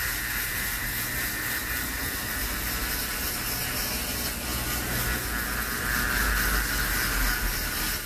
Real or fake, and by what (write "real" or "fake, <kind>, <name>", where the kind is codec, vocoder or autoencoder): real